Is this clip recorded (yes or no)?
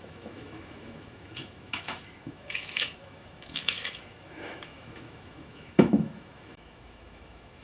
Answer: no